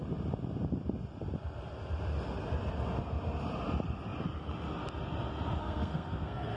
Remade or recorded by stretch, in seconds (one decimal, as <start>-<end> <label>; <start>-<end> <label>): 0.0-5.6 recorded; 5.6-6.6 remade